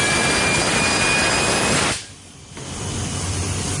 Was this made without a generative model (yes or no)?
yes